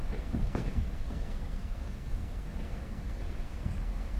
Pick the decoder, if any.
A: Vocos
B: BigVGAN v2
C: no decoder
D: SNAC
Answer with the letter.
D